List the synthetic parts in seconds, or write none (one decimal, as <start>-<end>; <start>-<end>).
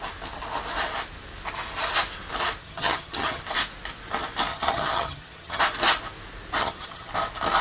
2.6-3.4; 4.5-5.6; 6.6-7.1